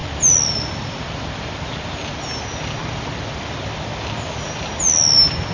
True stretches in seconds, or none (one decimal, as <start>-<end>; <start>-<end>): 0.0-5.5